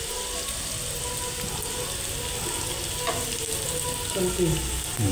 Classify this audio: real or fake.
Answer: real